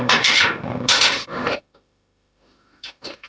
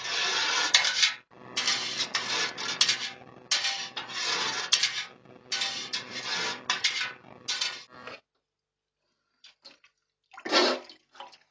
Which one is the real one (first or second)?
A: second